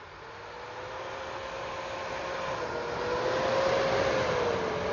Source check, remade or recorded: recorded